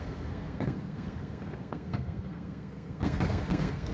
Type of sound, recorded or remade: remade